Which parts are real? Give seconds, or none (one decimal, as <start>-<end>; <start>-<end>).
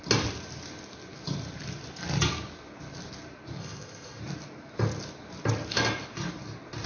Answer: 0.0-3.6; 4.2-6.9